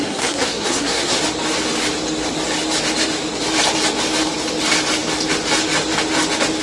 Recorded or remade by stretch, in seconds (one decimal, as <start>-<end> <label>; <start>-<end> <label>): 0.0-1.2 remade; 1.2-6.6 recorded